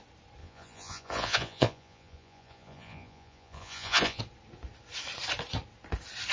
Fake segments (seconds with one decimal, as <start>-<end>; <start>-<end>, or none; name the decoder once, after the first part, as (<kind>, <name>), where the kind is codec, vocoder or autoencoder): 0.4-4.2 (vocoder, Vocos)